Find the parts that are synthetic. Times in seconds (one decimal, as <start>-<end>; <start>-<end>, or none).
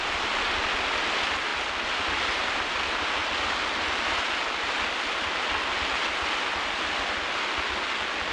none